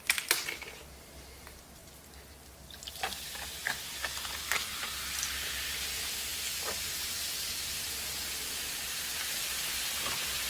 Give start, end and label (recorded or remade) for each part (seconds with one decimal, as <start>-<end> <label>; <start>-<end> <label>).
0.0-10.5 recorded